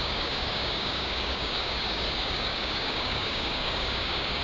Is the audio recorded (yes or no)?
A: no